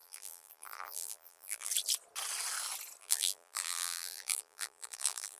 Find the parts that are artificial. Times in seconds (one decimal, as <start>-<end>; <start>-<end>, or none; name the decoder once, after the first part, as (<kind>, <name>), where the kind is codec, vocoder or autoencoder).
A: 0.0-1.7 (vocoder, BigVGAN v2); 3.0-5.4